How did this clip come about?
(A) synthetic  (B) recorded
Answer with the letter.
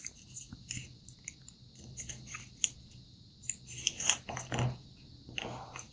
B